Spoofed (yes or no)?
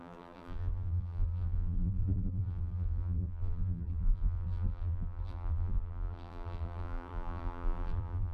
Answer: yes